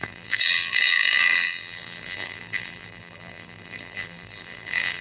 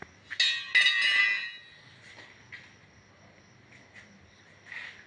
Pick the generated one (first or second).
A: first